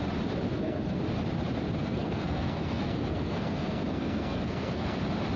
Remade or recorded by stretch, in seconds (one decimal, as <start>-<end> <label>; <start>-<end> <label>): 0.0-0.5 recorded; 0.5-1.0 remade; 1.0-1.8 recorded; 1.8-5.0 remade; 5.0-5.4 recorded